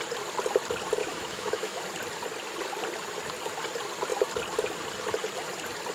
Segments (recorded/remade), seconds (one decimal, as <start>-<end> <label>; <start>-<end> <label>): 0.0-1.0 recorded; 1.0-1.8 remade; 1.8-5.9 recorded